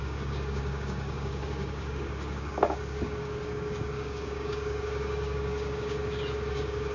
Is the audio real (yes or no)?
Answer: no